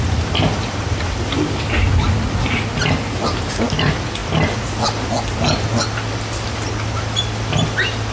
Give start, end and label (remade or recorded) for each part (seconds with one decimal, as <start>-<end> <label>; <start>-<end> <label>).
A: 0.0-8.1 recorded